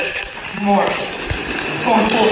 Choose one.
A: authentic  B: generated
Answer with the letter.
A